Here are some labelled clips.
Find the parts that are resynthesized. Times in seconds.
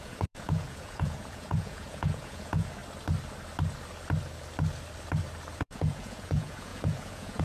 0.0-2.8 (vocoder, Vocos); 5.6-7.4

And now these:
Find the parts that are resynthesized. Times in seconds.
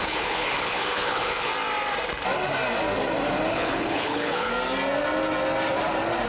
0.0-1.5 (codec, HILCodec); 3.5-4.5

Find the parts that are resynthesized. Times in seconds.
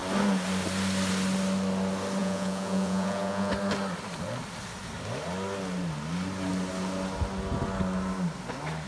2.2-3.5 (vocoder, Vocos)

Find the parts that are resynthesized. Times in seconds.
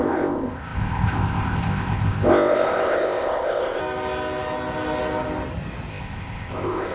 0.0-3.8 (codec, ZipCodec); 5.9-6.9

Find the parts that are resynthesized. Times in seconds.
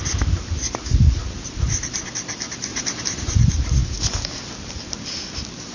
1.2-1.8 (vocoder, BigVGAN v2); 2.7-3.4